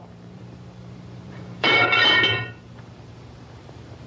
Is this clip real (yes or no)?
no